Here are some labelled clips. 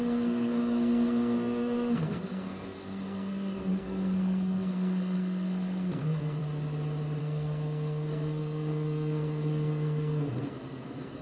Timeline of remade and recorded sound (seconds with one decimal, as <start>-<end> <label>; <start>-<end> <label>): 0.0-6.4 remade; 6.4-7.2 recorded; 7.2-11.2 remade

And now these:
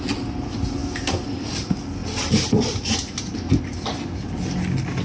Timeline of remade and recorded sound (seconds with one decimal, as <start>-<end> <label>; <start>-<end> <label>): 0.0-5.0 recorded

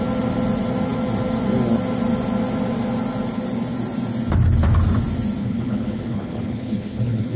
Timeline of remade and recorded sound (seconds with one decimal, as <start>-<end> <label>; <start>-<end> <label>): 0.0-5.4 recorded; 5.4-7.4 remade

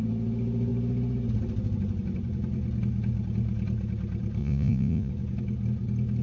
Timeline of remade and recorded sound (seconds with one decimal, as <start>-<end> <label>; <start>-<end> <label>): 0.0-4.4 recorded; 4.4-5.1 remade; 5.1-6.2 recorded

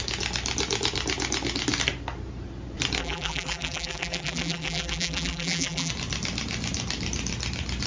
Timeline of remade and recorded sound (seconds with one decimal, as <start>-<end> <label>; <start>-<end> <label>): 0.0-3.0 recorded; 3.0-5.9 remade; 5.9-7.9 recorded

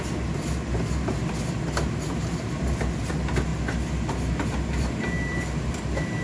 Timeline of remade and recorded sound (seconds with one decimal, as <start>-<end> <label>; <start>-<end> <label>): 0.0-6.2 recorded